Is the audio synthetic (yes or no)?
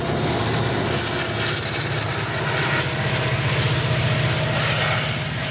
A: no